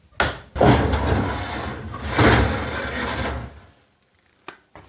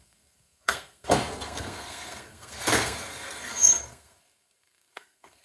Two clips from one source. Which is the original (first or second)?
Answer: first